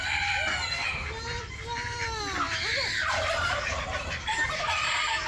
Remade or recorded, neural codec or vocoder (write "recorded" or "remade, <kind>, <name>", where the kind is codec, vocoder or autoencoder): recorded